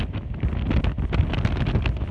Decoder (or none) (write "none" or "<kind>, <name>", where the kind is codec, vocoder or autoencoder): none